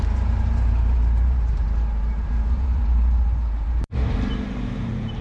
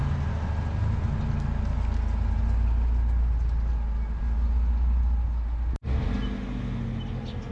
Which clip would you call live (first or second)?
second